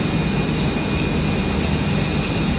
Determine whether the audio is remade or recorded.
recorded